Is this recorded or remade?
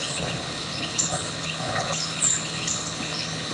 remade